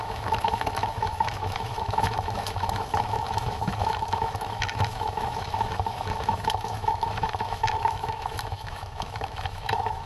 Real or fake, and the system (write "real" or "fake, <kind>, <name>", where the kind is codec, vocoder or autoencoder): fake, autoencoder, DAC-VAE